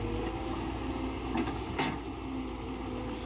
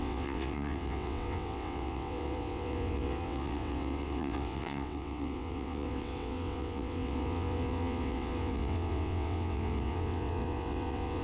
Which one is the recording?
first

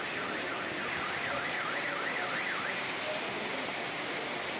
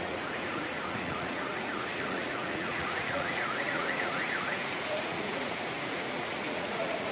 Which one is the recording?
first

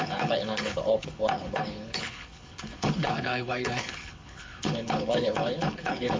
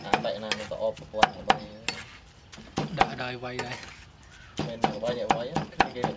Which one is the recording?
second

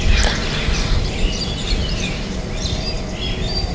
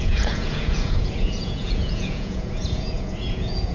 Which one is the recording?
first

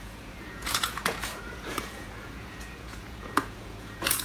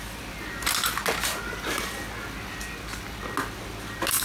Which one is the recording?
second